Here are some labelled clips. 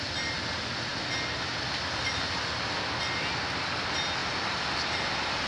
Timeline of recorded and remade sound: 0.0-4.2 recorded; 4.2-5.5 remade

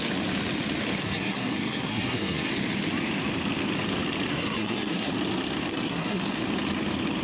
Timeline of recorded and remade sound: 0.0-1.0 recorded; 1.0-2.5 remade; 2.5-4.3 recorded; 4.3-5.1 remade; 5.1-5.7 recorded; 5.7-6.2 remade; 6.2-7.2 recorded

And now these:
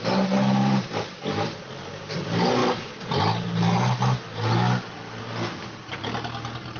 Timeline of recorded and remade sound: 0.0-0.6 recorded; 0.6-1.6 remade; 1.6-6.8 recorded